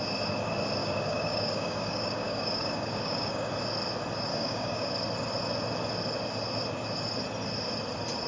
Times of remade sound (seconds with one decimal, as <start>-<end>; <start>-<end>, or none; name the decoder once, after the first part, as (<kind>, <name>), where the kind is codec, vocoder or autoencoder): 0.8-3.5 (codec, DAC); 4.3-4.9